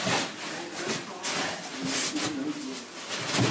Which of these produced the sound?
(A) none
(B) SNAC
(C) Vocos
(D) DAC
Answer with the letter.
A